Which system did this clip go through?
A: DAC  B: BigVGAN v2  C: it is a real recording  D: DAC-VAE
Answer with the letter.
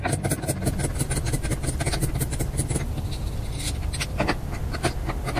C